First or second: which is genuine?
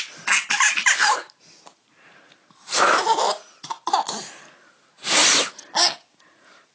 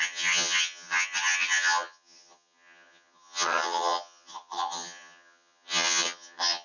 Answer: first